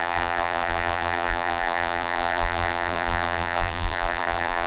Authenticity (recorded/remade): remade